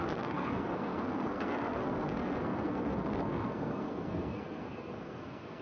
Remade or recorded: remade